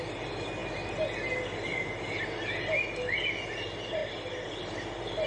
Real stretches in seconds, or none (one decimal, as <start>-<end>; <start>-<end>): 0.0-5.3